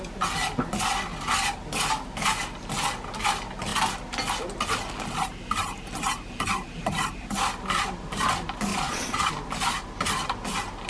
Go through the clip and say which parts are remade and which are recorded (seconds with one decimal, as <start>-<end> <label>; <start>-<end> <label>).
0.0-8.7 recorded; 8.7-9.3 remade; 9.3-10.9 recorded